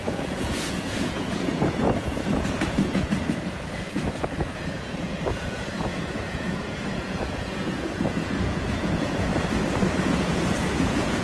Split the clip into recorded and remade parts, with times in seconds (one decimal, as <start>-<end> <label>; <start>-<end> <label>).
0.0-9.3 remade; 9.3-10.0 recorded; 10.0-11.2 remade